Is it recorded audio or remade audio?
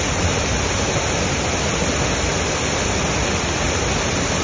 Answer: recorded